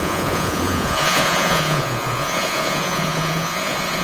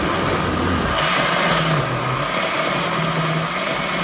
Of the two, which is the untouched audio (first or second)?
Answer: second